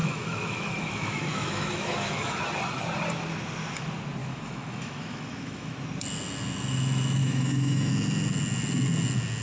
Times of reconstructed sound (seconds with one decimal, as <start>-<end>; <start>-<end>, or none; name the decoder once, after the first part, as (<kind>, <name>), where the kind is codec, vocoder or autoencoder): 0.0-2.4 (autoencoder, DAC-VAE); 4.2-5.8; 7.2-7.9